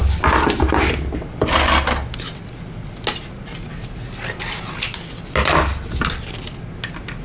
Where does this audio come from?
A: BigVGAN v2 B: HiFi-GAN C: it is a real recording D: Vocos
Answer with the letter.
C